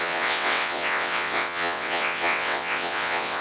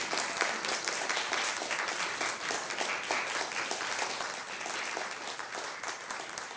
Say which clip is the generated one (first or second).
first